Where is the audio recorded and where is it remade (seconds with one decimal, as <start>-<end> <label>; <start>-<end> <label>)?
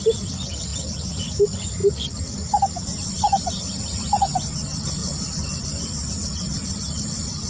0.0-7.5 recorded